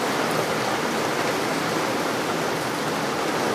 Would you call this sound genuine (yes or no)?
yes